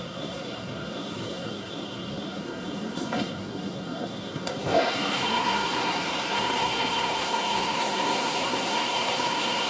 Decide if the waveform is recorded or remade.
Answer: remade